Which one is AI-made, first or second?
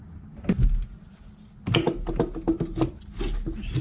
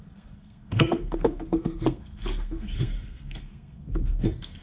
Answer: second